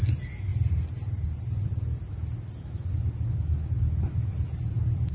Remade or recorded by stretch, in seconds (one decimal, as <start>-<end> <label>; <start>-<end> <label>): 0.0-5.1 recorded